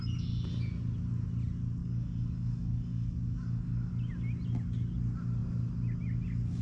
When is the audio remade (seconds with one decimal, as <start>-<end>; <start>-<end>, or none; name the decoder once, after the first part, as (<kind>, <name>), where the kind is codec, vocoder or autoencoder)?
1.8-3.9 (codec, DAC)